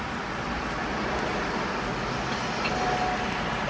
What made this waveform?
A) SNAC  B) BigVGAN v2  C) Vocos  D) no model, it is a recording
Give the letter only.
D